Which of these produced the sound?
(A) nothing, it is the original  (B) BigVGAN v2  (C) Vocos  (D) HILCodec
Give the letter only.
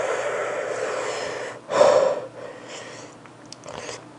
A